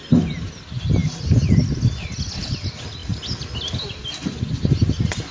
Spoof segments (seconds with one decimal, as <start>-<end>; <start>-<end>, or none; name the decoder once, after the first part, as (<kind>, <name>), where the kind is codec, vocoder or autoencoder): none